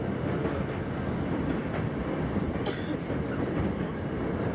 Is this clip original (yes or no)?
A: yes